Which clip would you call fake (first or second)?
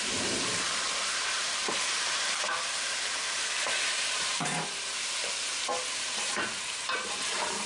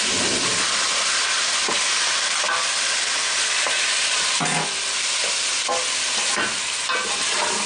first